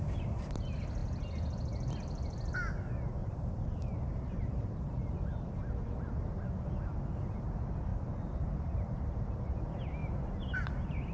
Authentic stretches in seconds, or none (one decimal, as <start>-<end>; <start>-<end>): 0.0-3.2; 5.5-7.9; 9.6-11.1

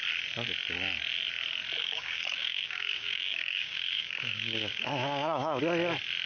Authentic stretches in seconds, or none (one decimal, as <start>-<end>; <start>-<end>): 0.0-1.8; 5.6-6.3